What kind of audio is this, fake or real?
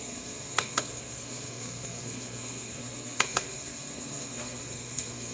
fake